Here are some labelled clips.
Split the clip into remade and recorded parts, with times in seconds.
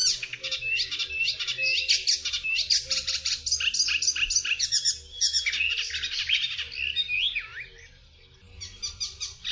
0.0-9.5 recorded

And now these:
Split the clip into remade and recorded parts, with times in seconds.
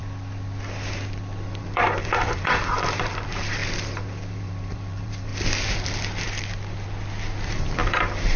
0.0-1.6 recorded; 1.6-3.6 remade; 3.6-4.3 recorded; 4.3-5.3 remade; 5.3-7.5 recorded; 7.5-8.4 remade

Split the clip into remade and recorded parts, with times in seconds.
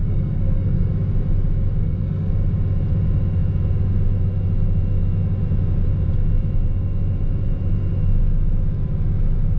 0.0-0.9 remade; 0.9-1.8 recorded; 1.8-2.3 remade; 2.3-9.6 recorded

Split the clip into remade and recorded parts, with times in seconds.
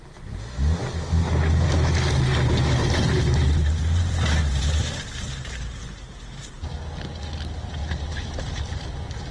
0.0-2.8 recorded; 2.8-6.7 remade; 6.7-7.8 recorded; 7.8-8.6 remade; 8.6-9.3 recorded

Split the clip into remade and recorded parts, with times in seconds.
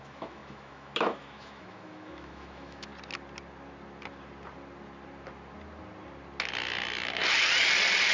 0.0-2.9 remade; 2.9-8.1 recorded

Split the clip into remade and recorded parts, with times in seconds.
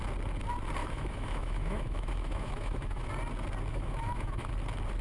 0.0-0.8 recorded; 0.8-3.1 remade; 3.1-3.7 recorded; 3.7-4.5 remade; 4.5-5.0 recorded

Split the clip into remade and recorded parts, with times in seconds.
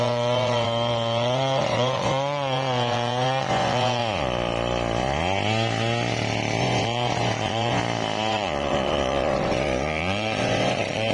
0.0-4.0 remade; 4.0-6.6 recorded; 6.6-7.8 remade; 7.8-8.3 recorded; 8.3-11.1 remade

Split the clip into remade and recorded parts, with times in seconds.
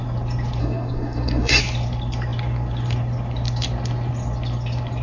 0.0-0.6 recorded; 0.6-1.6 remade; 1.6-5.0 recorded